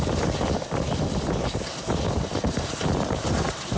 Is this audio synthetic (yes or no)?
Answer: no